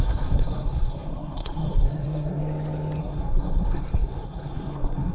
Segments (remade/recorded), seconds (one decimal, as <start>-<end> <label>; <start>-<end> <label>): 0.0-2.4 remade; 2.4-3.0 recorded; 3.0-5.1 remade